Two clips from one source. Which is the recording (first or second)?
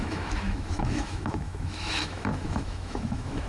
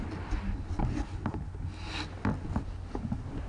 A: second